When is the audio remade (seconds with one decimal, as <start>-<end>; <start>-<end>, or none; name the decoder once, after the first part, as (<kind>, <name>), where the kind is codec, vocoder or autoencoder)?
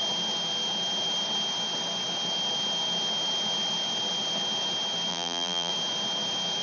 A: 5.1-5.7 (vocoder, BigVGAN v2)